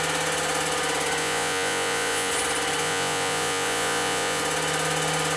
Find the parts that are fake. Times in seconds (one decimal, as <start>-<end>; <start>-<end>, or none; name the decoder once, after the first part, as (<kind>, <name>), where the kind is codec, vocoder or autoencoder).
1.2-2.3 (vocoder, Vocos); 2.8-4.4